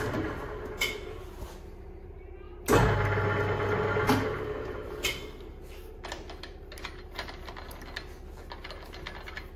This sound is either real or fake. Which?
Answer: real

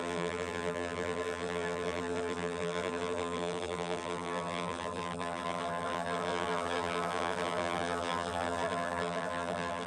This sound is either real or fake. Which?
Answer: fake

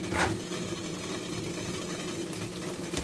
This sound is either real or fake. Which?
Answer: real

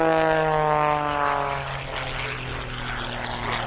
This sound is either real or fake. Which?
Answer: real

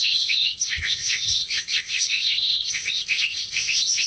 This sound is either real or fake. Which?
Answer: fake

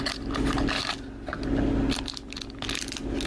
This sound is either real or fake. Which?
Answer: real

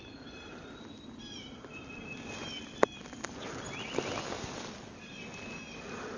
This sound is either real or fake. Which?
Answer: real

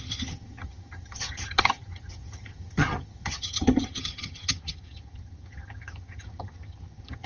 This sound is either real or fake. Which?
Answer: fake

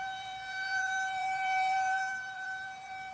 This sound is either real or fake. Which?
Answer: fake